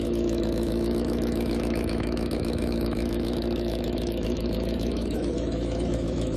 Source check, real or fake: fake